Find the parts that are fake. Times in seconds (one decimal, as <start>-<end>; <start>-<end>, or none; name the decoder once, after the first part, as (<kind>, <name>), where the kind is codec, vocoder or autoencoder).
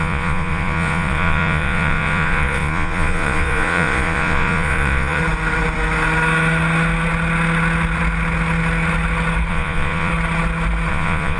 0.0-5.2 (vocoder, Vocos); 9.5-10.1; 10.9-11.4